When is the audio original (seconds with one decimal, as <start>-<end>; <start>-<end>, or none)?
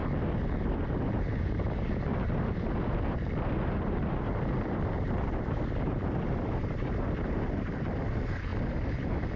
0.0-1.0; 2.1-4.2